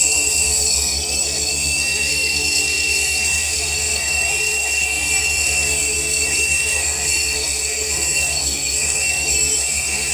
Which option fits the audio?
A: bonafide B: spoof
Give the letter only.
B